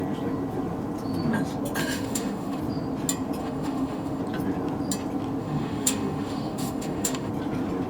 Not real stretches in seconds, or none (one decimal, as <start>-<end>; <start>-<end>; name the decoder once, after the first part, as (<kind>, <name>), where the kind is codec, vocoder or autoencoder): 1.8-2.6 (autoencoder, DAC-VAE); 3.4-4.2; 5.4-7.3